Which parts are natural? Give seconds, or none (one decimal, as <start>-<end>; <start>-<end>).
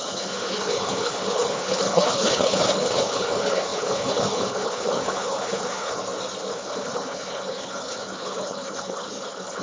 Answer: 6.0-6.5